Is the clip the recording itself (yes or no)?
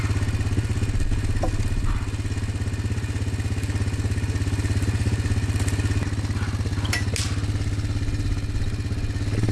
yes